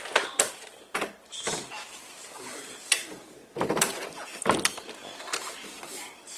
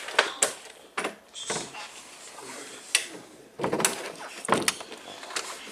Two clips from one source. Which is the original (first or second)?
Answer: second